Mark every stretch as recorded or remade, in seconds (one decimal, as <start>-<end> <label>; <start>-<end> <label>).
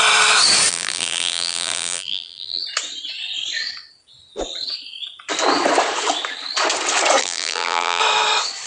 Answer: 0.0-0.7 recorded; 0.7-2.6 remade; 2.6-7.2 recorded; 7.2-8.0 remade; 8.0-8.7 recorded